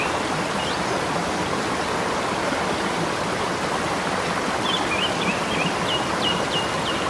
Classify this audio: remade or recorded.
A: recorded